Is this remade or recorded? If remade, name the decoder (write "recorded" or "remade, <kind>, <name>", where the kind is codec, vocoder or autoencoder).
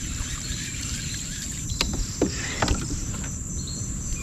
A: remade, vocoder, BigVGAN v2